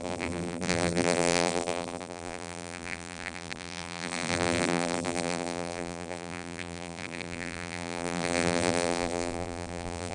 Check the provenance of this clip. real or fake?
fake